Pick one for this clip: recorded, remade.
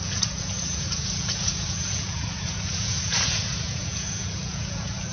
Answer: remade